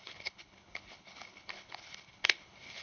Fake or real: fake